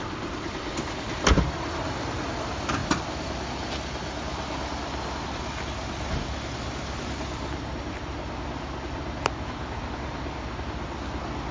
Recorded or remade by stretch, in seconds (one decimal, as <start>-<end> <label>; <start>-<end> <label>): 0.0-11.5 recorded

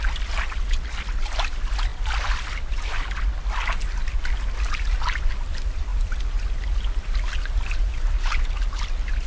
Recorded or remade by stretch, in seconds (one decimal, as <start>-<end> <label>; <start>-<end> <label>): 0.0-9.3 recorded

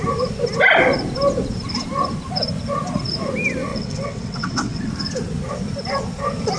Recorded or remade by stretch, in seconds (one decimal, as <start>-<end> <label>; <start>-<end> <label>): 0.0-3.7 recorded; 3.7-4.9 remade; 4.9-6.6 recorded

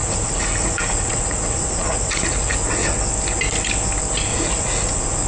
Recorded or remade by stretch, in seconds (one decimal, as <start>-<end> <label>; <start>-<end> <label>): 0.0-2.7 remade; 2.7-4.3 recorded; 4.3-5.3 remade

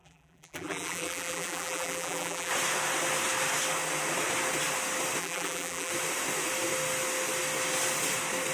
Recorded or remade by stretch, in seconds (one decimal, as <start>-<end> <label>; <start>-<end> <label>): 0.0-2.5 remade; 2.5-5.2 recorded; 5.2-5.9 remade; 5.9-8.5 recorded

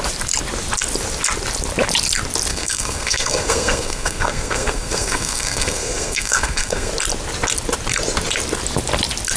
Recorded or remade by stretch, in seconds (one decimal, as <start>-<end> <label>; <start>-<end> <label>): 0.0-2.5 recorded; 2.5-6.9 remade; 6.9-9.4 recorded

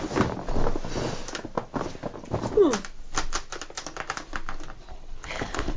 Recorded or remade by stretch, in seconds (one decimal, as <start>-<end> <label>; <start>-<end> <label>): 0.0-4.9 recorded; 4.9-5.8 remade

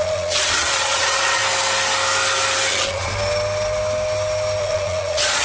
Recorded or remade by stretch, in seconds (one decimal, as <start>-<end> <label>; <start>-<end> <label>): 0.0-1.4 remade; 1.4-2.7 recorded; 2.7-3.1 remade; 3.1-4.6 recorded; 4.6-5.4 remade